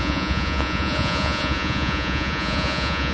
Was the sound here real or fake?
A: fake